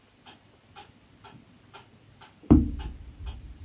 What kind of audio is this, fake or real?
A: real